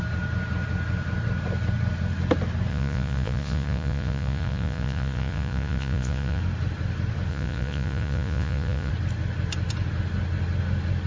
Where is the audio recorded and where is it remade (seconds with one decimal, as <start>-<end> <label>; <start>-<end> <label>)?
0.0-2.7 recorded; 2.7-6.4 remade; 6.4-7.3 recorded; 7.3-8.9 remade; 8.9-11.1 recorded

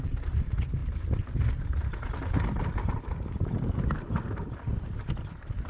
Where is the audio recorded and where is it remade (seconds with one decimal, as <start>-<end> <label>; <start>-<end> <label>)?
0.0-5.7 remade

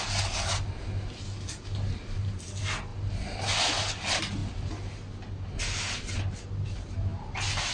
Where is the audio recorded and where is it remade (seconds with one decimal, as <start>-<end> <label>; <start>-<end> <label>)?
0.0-7.7 recorded

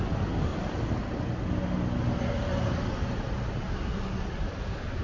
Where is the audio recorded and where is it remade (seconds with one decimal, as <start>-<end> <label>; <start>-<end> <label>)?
0.0-0.5 recorded; 0.5-1.2 remade; 1.2-5.0 recorded